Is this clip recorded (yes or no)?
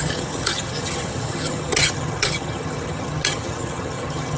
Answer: no